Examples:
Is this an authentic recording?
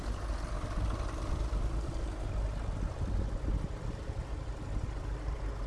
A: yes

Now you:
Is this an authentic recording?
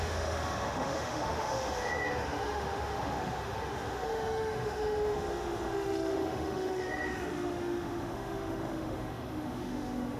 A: no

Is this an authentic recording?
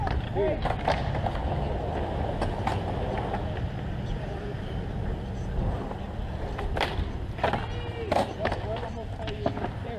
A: yes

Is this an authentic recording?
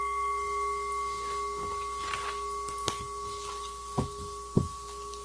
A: yes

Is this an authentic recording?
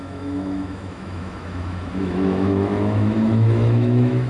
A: no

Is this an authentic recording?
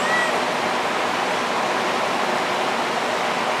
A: yes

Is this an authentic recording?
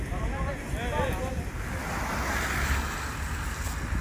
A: yes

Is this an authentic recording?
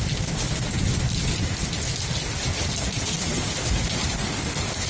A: yes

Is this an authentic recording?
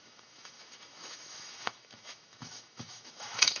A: no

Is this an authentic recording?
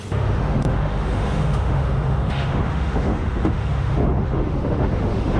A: no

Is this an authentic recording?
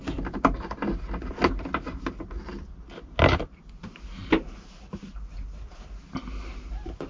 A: yes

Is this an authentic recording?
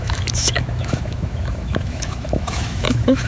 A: no